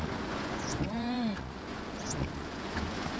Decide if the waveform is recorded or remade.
remade